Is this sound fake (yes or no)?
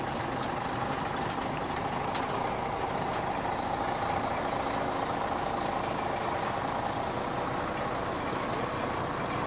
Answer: no